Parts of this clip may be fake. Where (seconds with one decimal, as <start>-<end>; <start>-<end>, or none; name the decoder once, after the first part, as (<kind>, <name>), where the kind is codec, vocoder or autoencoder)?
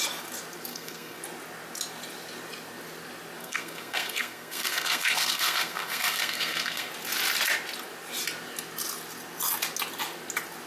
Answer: 0.7-1.2 (codec, SNAC); 3.4-6.9